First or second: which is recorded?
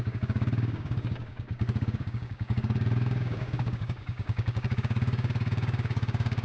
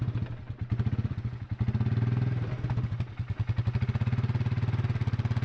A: second